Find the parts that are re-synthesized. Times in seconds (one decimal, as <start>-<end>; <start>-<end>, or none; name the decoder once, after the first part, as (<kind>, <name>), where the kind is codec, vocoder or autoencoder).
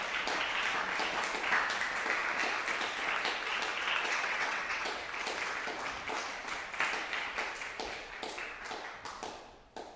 4.0-5.0 (vocoder, WaveNeXt)